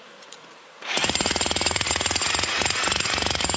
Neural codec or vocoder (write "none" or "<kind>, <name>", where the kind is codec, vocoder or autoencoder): vocoder, Vocos